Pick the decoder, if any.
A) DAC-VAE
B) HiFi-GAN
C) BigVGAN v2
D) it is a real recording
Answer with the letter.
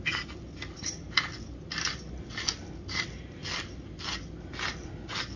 D